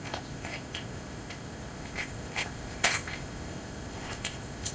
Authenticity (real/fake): fake